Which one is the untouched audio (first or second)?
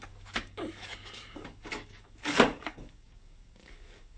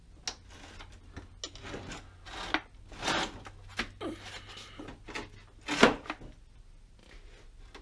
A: second